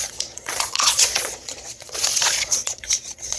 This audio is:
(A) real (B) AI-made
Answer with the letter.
B